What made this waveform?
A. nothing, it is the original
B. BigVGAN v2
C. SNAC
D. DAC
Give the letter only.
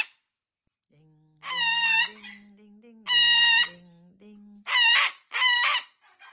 A